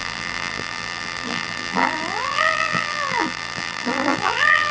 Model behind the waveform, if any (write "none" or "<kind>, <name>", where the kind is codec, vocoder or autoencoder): vocoder, BigVGAN v2